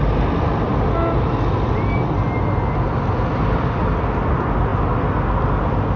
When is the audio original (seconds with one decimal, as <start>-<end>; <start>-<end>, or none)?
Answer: 0.0-6.0